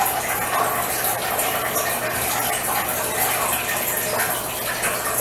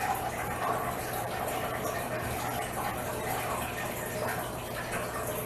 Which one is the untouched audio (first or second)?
first